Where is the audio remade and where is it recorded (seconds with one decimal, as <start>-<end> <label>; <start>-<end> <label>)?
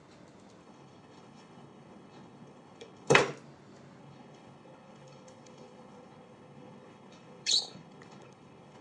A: 0.0-0.6 recorded; 0.6-3.2 remade; 3.2-4.0 recorded; 4.0-8.8 remade